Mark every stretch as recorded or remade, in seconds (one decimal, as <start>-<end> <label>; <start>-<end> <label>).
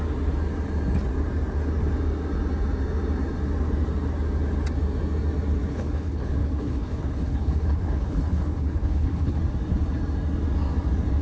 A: 0.0-5.7 recorded; 5.7-9.4 remade; 9.4-11.2 recorded